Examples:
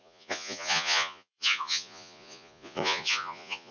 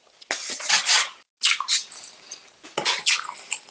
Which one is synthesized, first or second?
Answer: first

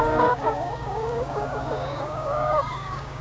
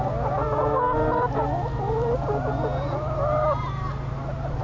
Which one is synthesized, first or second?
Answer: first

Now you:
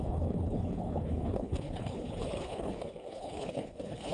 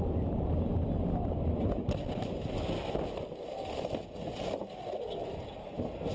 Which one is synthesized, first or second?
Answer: first